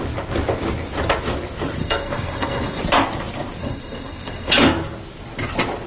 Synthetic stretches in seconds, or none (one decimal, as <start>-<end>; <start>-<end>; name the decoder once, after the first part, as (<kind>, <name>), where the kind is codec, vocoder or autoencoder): 1.8-2.8 (codec, SNAC); 3.6-4.5